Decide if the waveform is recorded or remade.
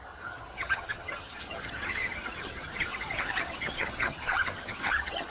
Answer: remade